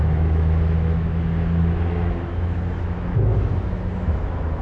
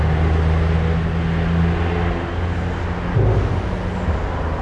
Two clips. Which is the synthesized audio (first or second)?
first